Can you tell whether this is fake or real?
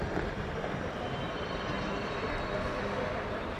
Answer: fake